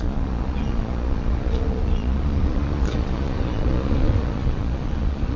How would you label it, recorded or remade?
remade